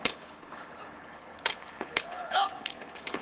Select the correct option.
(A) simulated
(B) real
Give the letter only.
A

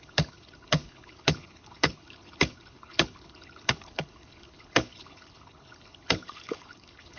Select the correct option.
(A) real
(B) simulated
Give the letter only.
B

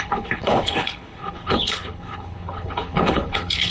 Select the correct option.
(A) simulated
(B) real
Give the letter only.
A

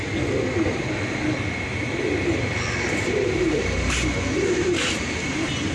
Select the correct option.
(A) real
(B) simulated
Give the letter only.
A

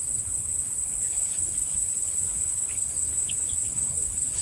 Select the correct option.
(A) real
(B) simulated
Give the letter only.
B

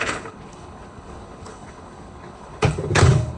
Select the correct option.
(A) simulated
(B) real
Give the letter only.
A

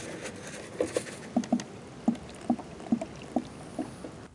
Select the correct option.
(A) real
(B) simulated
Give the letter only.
A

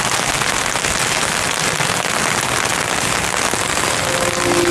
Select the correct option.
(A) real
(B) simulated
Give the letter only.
A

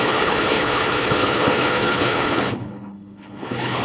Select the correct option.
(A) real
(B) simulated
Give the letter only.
B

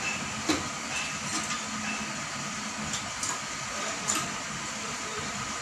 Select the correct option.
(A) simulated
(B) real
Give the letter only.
B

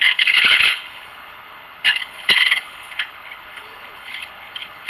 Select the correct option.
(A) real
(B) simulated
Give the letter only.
B